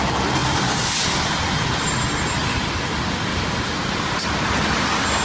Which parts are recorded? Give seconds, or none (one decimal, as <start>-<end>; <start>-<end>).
0.0-3.3; 4.3-5.2